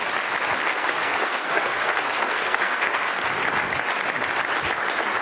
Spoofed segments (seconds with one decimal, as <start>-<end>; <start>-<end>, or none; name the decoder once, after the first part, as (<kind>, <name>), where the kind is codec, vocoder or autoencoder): 0.6-3.2 (codec, SNAC)